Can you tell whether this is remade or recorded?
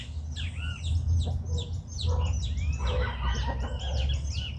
recorded